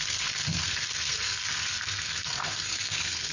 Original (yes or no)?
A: no